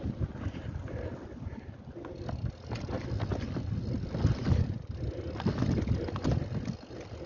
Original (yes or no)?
yes